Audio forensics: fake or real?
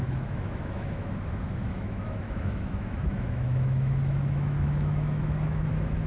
fake